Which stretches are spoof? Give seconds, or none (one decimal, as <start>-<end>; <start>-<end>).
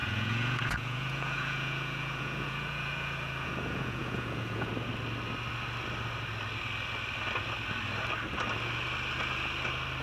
0.0-4.7